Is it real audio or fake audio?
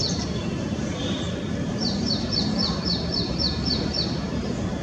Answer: fake